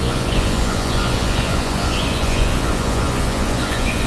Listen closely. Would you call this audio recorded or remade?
remade